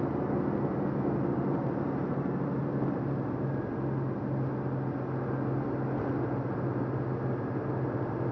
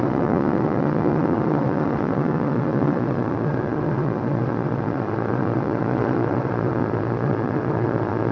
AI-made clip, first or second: second